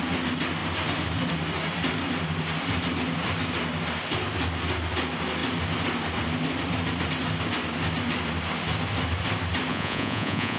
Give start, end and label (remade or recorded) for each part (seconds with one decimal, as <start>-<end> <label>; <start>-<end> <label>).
0.0-9.7 recorded; 9.7-10.6 remade